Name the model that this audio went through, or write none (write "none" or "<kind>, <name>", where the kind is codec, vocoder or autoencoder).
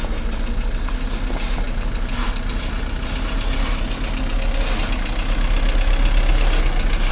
none